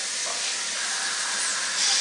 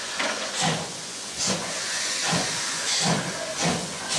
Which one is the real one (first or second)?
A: first